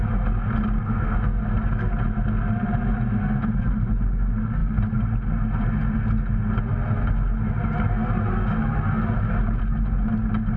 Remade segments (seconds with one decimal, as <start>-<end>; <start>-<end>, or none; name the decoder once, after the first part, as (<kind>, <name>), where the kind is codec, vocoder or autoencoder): 0.8-1.4 (codec, SNAC)